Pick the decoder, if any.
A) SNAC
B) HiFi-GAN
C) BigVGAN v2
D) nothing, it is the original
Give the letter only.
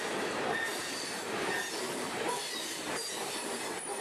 D